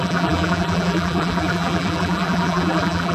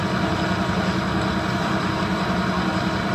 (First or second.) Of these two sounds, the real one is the second